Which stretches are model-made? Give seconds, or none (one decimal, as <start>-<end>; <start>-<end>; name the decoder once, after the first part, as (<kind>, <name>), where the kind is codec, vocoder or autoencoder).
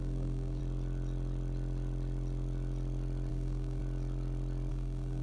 0.0-0.6 (codec, SNAC); 3.3-3.8; 4.7-5.2